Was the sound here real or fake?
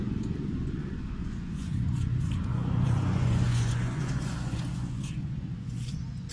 fake